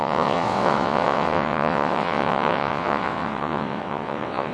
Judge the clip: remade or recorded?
remade